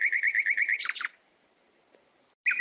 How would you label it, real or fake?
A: real